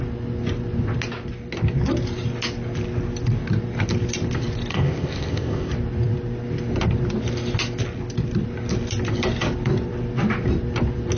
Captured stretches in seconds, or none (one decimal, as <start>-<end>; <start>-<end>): 0.0-4.7; 5.7-11.2